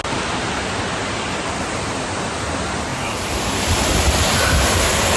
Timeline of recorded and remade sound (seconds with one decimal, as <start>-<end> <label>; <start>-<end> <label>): 0.0-1.0 recorded; 1.0-1.6 remade; 1.6-2.9 recorded; 2.9-3.8 remade; 3.8-5.2 recorded